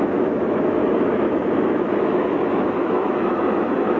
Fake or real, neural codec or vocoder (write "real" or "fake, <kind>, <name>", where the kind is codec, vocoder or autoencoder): fake, autoencoder, DAC-VAE